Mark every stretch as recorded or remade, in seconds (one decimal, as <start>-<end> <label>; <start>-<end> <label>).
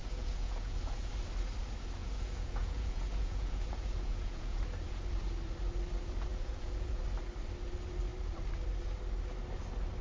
0.0-1.1 remade; 1.1-2.0 recorded; 2.0-4.6 remade; 4.6-6.3 recorded; 6.3-7.0 remade; 7.0-10.0 recorded